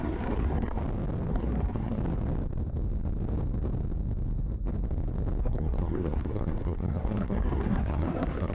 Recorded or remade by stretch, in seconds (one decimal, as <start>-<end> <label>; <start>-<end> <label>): 0.0-0.8 remade; 0.8-1.3 recorded; 1.3-2.0 remade; 2.0-5.4 recorded; 5.4-8.5 remade